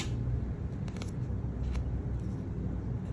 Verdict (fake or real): real